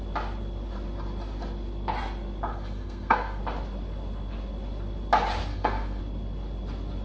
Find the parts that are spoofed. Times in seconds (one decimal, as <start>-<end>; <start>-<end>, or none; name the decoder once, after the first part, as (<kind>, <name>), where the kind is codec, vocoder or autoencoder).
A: 2.5-3.4 (codec, SNAC); 5.5-6.0